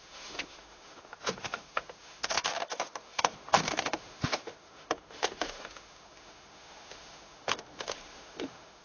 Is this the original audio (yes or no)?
no